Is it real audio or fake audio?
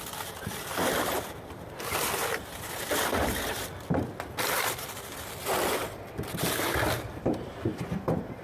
real